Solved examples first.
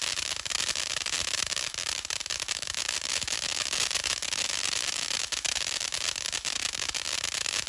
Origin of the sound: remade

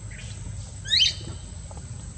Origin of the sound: recorded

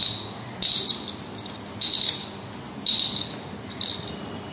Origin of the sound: recorded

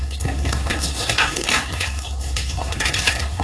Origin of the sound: remade